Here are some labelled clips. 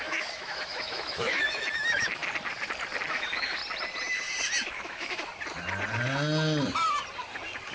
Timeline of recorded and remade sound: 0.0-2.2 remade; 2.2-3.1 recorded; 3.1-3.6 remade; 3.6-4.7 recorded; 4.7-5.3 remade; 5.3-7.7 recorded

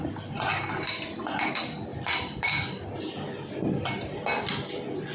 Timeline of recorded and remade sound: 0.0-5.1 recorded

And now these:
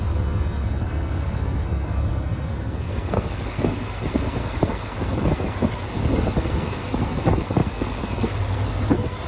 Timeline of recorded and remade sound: 0.0-9.3 remade

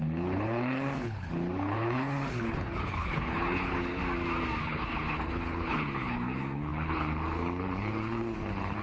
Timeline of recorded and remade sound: 0.0-4.0 remade; 4.0-4.6 recorded; 4.6-8.8 remade

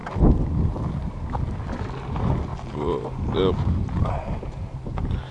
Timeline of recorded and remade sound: 0.0-5.3 recorded